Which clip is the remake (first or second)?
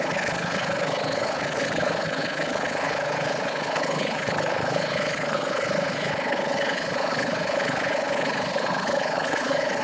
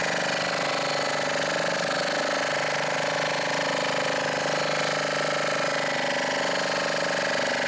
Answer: first